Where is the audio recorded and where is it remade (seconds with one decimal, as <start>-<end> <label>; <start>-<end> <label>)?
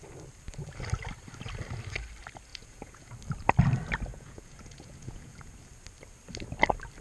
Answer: 0.0-2.5 recorded; 2.5-3.1 remade; 3.1-4.1 recorded; 4.1-5.5 remade; 5.5-7.0 recorded